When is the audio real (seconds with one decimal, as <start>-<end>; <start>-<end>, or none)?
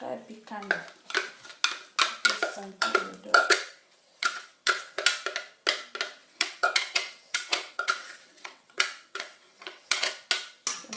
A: 0.0-2.5; 5.0-6.2; 10.1-11.0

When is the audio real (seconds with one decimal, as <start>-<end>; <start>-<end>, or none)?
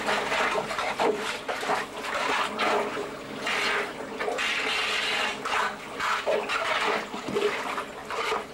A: 0.0-8.5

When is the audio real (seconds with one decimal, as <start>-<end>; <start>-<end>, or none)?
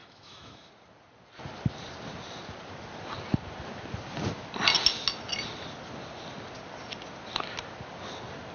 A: 0.7-8.5